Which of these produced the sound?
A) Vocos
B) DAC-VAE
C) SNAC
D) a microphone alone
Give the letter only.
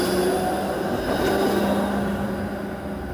D